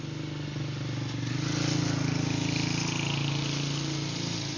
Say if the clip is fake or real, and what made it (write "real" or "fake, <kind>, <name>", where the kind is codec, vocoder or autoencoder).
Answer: real